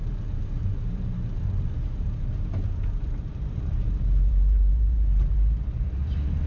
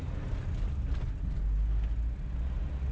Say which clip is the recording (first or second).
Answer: second